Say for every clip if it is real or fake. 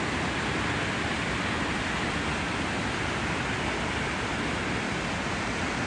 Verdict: real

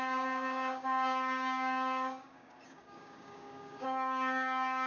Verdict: fake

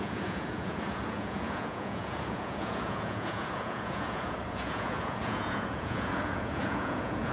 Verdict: fake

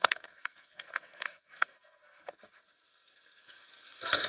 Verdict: fake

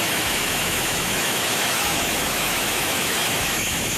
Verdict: fake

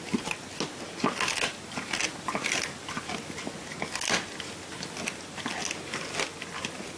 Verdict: real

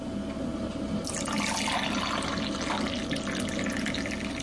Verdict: real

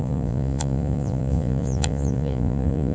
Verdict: fake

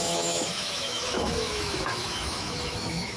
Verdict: fake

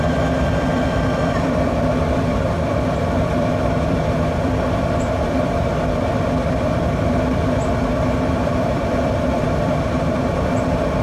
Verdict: fake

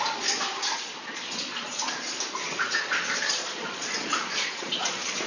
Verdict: fake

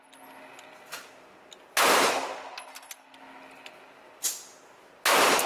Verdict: real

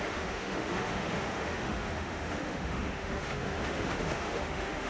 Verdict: fake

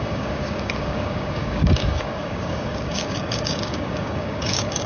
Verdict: fake